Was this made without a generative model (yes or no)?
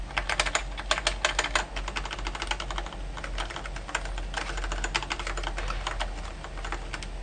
yes